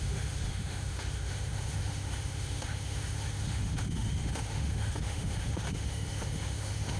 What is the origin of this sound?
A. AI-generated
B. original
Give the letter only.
A